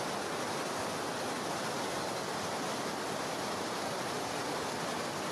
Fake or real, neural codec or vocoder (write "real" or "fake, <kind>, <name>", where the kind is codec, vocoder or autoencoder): real